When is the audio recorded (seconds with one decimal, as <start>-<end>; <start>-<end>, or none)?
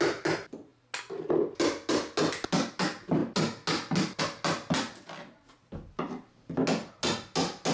0.0-7.7